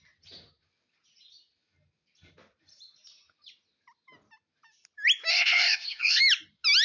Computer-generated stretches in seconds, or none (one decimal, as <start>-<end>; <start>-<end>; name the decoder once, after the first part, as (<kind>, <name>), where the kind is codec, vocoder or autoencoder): 5.3-6.2 (codec, ZipCodec)